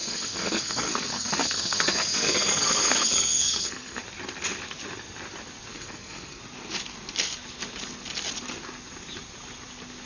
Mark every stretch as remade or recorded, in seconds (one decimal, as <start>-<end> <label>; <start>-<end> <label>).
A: 0.0-4.0 remade; 4.0-5.7 recorded; 5.7-6.4 remade; 6.4-10.1 recorded